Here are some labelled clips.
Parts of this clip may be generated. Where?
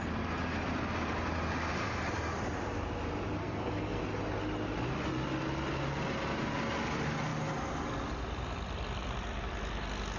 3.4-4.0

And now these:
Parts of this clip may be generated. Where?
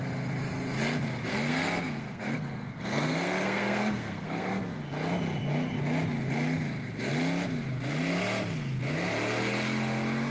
1.3-4.8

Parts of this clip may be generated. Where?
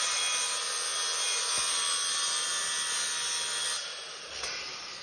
none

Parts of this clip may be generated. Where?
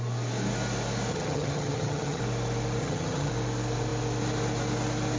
1.1-2.2; 2.8-3.3